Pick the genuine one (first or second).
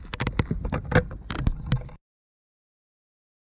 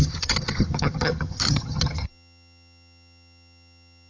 first